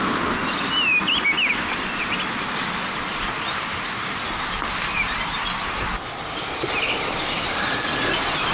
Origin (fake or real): real